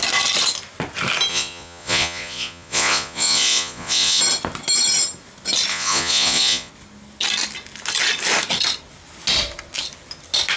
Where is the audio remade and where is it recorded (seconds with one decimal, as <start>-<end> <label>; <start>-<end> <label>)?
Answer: 0.0-1.3 recorded; 1.3-4.2 remade; 4.2-5.7 recorded; 5.7-6.7 remade; 6.7-10.6 recorded